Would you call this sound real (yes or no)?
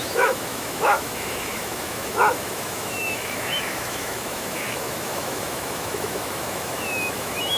no